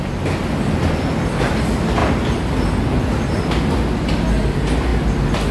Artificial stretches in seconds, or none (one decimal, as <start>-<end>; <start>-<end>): none